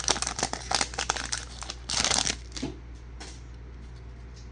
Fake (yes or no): no